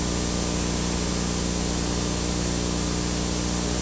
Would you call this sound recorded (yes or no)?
yes